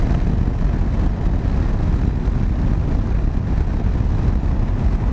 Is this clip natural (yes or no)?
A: yes